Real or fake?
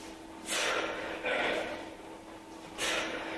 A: real